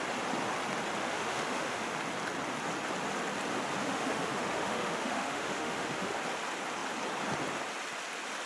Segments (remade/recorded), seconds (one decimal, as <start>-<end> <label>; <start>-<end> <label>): 0.0-1.0 recorded; 1.0-1.9 remade; 1.9-3.8 recorded; 3.8-6.2 remade; 6.2-8.5 recorded

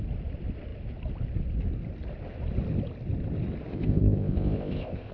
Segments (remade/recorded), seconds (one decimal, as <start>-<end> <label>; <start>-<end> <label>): 0.0-3.7 recorded; 3.7-5.1 remade

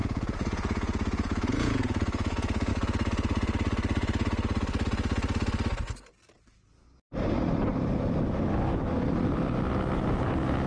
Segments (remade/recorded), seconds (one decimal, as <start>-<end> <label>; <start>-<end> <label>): 0.0-2.7 remade; 2.7-10.7 recorded

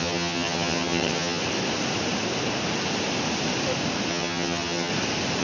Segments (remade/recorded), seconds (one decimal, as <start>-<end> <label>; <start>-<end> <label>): 0.0-1.4 remade; 1.4-4.1 recorded; 4.1-4.9 remade; 4.9-5.4 recorded

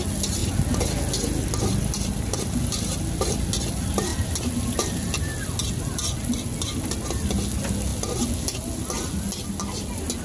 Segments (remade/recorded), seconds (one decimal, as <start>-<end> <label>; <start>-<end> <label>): 0.0-10.2 recorded

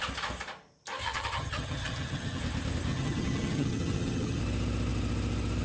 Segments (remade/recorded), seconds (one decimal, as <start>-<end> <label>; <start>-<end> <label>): 0.0-1.0 recorded; 1.0-2.4 remade; 2.4-2.9 recorded; 2.9-4.4 remade; 4.4-5.6 recorded